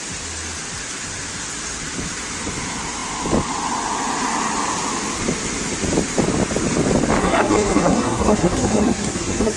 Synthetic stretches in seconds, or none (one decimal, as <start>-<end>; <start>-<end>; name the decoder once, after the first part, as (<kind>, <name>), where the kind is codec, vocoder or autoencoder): 7.2-9.6 (codec, SNAC)